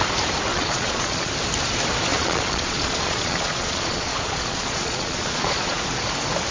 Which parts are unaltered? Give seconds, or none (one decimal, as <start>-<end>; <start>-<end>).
0.0-0.5; 1.3-2.1; 5.8-6.5